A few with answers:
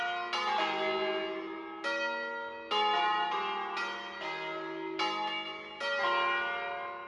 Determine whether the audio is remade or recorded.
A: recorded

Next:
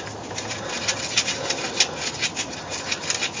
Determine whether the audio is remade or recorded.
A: recorded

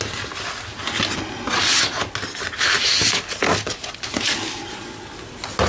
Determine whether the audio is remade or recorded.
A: recorded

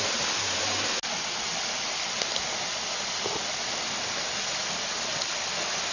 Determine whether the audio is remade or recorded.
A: recorded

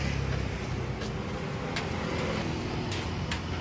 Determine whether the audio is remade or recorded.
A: recorded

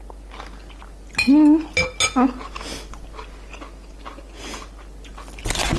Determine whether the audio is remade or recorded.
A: recorded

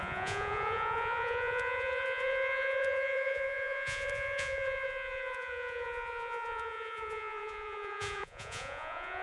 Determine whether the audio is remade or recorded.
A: remade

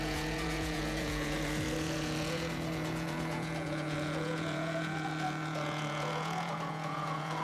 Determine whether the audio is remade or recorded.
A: remade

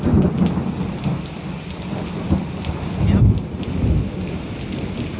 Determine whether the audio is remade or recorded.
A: recorded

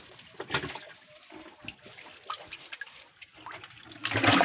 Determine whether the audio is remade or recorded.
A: recorded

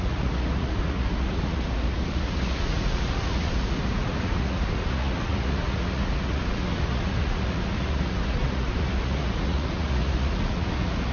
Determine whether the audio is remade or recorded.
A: remade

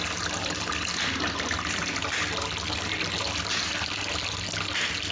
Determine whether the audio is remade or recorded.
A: recorded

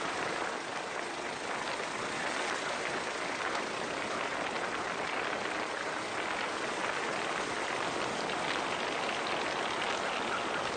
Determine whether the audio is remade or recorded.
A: recorded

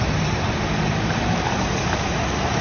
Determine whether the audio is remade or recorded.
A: recorded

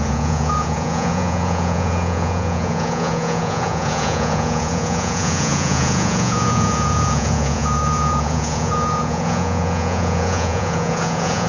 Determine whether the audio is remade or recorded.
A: remade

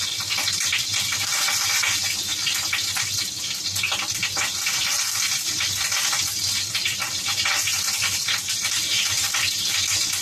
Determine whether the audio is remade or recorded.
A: recorded